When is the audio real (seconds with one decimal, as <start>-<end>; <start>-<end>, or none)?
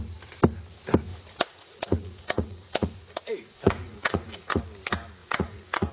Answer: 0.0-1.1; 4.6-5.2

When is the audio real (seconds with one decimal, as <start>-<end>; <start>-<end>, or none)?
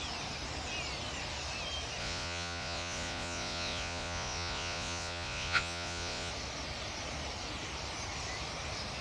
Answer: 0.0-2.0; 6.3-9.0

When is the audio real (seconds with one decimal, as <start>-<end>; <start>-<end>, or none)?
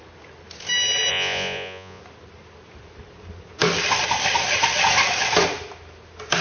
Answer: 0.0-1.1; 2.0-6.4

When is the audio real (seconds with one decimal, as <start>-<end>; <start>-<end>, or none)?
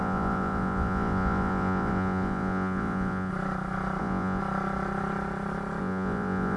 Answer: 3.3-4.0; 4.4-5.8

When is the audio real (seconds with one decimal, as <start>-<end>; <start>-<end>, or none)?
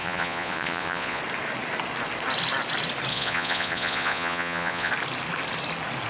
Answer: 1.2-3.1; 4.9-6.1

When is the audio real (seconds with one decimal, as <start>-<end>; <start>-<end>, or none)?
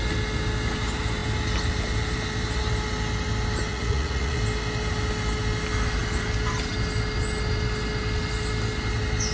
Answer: 0.0-3.7; 4.4-9.3